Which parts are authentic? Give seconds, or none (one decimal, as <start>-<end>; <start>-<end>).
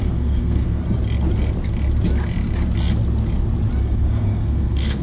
0.8-3.8